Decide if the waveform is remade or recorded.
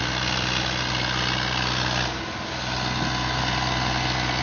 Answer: recorded